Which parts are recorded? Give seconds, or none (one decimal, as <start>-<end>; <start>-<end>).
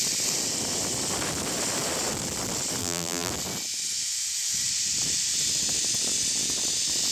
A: 0.0-2.8; 3.3-7.1